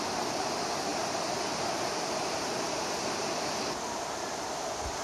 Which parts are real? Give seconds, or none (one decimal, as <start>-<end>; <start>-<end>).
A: 0.0-5.0